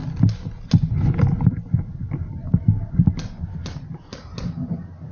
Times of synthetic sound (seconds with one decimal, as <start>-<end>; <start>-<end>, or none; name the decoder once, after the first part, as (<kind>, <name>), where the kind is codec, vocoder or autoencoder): none